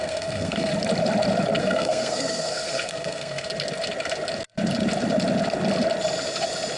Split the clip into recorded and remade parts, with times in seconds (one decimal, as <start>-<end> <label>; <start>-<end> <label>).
0.0-0.7 remade; 0.7-1.6 recorded; 1.6-3.5 remade; 3.5-6.8 recorded